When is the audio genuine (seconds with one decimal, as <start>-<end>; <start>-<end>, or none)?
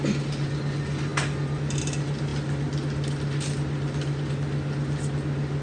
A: 0.0-5.6